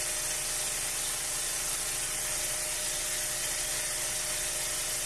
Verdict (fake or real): real